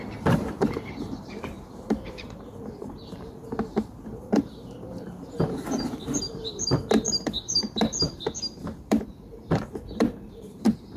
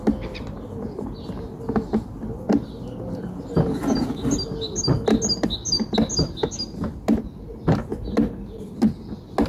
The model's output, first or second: first